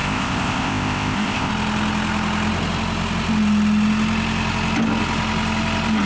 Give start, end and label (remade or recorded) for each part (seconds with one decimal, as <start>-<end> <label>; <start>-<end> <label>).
0.0-1.5 remade; 1.5-6.1 recorded